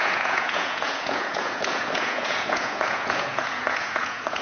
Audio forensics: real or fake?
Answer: fake